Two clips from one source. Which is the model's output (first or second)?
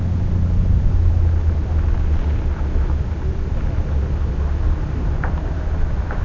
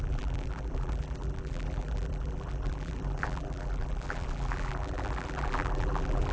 second